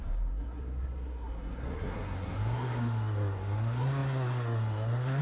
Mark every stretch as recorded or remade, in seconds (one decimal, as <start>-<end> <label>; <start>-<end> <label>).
0.0-5.2 remade